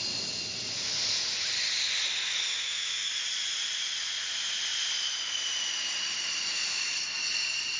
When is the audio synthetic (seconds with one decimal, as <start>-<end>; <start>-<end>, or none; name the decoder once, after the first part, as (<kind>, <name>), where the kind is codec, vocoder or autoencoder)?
2.5-3.1 (autoencoder, DAC-VAE)